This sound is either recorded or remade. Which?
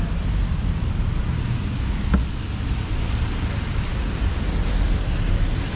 recorded